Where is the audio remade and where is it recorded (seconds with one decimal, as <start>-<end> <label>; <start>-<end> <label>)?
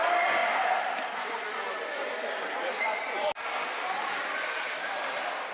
0.0-5.5 recorded